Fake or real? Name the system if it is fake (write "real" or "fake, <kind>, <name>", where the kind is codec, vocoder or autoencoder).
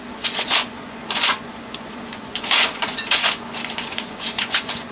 fake, vocoder, Vocos